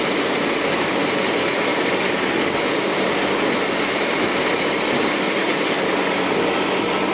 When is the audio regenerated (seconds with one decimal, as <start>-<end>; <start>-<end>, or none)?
none